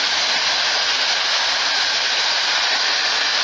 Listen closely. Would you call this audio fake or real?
real